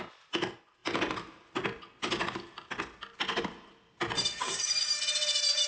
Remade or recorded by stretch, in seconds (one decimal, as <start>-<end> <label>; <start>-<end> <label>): 0.0-4.4 recorded; 4.4-5.0 remade; 5.0-5.7 recorded